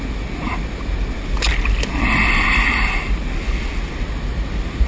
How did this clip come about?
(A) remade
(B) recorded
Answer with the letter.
B